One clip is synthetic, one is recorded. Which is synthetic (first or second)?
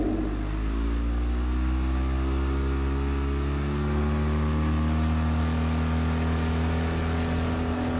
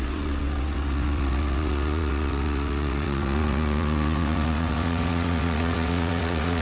second